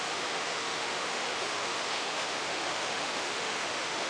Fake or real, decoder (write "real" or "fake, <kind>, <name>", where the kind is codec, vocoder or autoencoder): fake, autoencoder, DAC-VAE